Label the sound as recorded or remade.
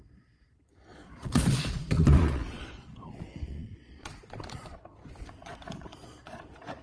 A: remade